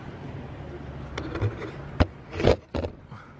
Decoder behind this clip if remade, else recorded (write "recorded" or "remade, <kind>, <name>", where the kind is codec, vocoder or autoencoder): recorded